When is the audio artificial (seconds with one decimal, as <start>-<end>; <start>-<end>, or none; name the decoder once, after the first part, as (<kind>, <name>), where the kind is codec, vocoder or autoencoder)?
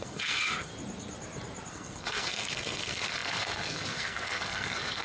0.0-0.7 (codec, SNAC); 1.7-5.0